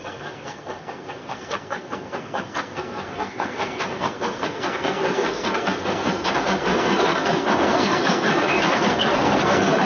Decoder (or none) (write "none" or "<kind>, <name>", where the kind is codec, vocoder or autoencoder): codec, SNAC